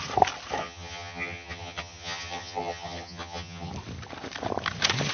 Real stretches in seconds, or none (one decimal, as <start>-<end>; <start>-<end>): 0.0-0.6; 3.7-5.1